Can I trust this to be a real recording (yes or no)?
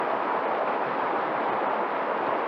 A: yes